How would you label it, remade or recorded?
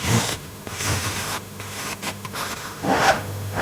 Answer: remade